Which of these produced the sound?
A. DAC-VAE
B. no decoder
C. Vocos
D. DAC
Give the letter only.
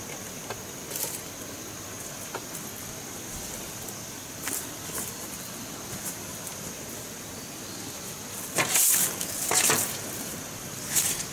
B